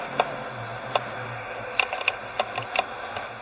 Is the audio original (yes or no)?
yes